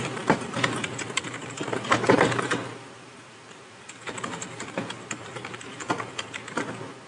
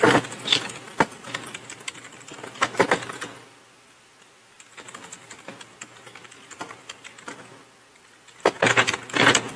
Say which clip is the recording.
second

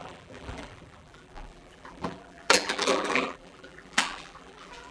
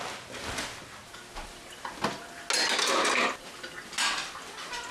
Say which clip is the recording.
second